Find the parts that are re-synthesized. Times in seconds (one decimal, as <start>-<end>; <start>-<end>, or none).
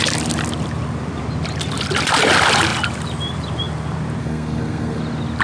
4.2-5.0